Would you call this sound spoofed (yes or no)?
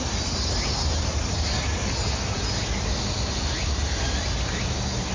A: no